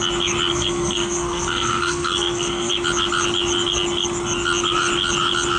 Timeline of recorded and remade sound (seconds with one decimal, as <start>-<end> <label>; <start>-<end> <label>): 0.0-0.5 recorded; 0.5-2.7 remade; 2.7-5.6 recorded